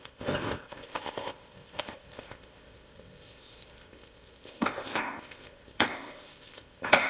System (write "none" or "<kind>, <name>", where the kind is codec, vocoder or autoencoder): codec, ZipCodec